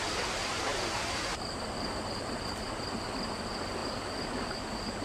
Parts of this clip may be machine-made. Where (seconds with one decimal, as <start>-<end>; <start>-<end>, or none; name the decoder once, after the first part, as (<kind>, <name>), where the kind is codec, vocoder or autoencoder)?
0.7-2.0 (vocoder, BigVGAN v2); 3.8-5.0